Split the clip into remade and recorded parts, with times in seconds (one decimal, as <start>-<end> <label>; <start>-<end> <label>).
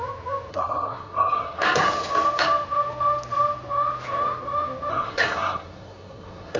0.0-0.5 recorded; 0.5-1.6 remade; 1.6-4.9 recorded; 4.9-6.6 remade